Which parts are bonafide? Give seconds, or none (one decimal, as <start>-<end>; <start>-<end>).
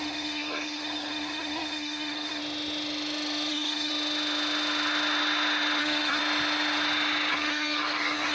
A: 2.4-3.5; 3.9-5.8; 6.2-7.3